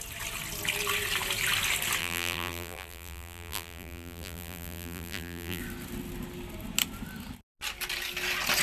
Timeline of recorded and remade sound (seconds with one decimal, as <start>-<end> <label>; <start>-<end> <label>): 0.0-2.0 recorded; 2.0-5.6 remade; 5.6-8.6 recorded